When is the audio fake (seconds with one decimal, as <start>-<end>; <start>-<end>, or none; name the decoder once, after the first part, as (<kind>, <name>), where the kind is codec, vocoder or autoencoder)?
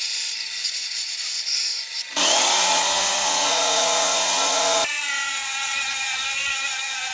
0.0-7.1 (vocoder, Vocos)